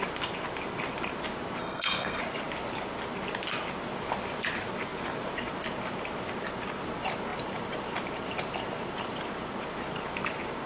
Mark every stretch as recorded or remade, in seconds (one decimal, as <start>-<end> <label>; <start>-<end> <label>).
0.0-1.6 recorded; 1.6-2.2 remade; 2.2-10.7 recorded